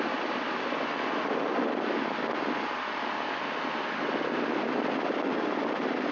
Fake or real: real